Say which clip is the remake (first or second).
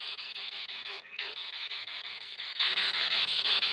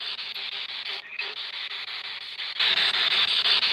first